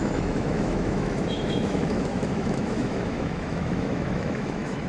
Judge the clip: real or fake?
fake